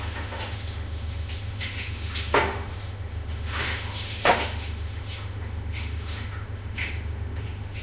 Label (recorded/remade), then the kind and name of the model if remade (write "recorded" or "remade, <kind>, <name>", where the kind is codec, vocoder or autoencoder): remade, autoencoder, DAC-VAE